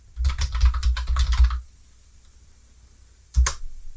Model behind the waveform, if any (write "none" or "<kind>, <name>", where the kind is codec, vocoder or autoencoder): none